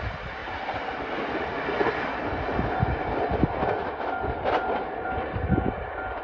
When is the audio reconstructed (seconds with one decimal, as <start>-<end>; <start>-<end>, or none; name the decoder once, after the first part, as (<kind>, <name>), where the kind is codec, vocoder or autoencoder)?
none